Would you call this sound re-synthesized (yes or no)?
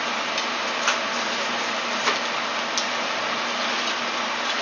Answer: no